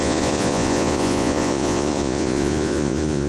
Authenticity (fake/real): fake